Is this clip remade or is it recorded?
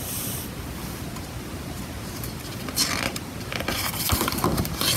recorded